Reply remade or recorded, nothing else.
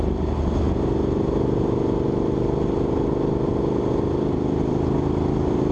recorded